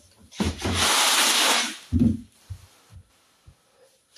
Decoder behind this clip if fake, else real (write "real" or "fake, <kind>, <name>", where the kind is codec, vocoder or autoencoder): fake, vocoder, BigVGAN v2